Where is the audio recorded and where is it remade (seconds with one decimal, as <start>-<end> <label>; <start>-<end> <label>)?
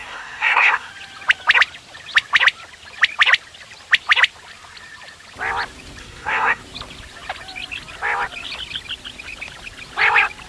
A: 0.0-0.9 remade; 0.9-6.0 recorded; 6.0-6.6 remade; 6.6-10.5 recorded